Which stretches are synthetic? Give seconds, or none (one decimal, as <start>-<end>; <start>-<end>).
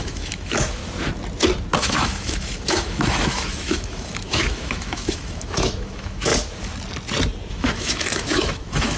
0.0-0.8; 1.8-6.3; 7.5-9.0